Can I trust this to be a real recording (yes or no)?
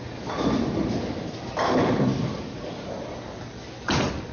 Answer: yes